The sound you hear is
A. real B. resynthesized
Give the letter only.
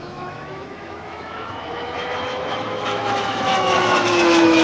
B